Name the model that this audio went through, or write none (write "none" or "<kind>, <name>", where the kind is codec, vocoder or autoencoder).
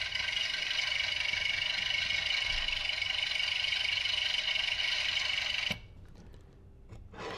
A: none